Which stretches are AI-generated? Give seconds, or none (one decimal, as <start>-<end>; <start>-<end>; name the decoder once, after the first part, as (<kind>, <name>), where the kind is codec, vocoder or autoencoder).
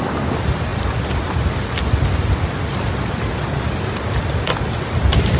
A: none